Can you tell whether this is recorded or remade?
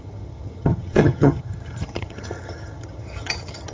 remade